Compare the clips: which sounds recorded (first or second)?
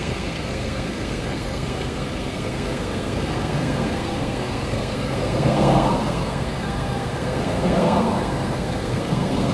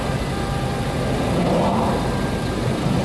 second